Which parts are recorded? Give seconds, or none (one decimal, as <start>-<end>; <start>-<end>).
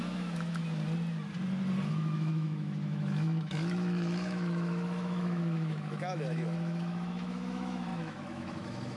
0.6-1.9